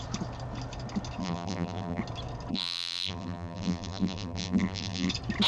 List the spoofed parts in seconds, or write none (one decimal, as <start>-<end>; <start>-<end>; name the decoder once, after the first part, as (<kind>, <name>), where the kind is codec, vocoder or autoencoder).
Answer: 1.2-2.0 (vocoder, BigVGAN v2); 2.5-5.1